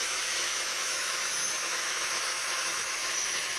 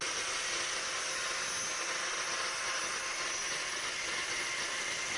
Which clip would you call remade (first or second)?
first